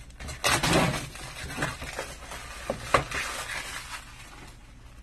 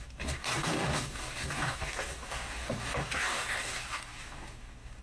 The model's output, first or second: second